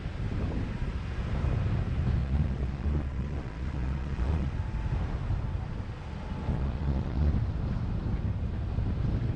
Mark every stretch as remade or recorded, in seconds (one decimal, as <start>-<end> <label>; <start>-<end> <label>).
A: 0.0-2.2 recorded; 2.2-4.5 remade; 4.5-6.5 recorded; 6.5-7.3 remade; 7.3-9.4 recorded